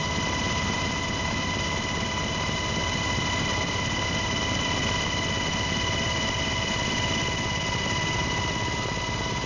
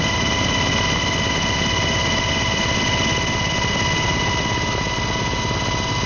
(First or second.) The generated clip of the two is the first